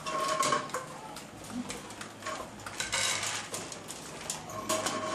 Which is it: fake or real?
real